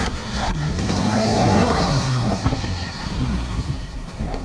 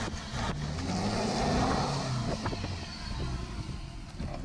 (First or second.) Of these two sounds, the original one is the second